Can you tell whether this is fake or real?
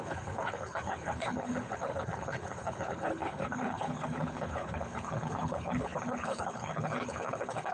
fake